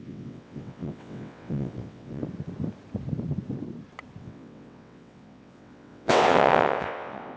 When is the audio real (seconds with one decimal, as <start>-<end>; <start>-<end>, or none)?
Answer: 2.2-4.2